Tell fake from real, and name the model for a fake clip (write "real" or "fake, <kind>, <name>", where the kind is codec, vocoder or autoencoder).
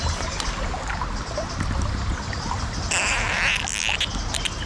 real